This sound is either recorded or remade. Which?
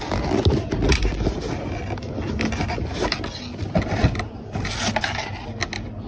recorded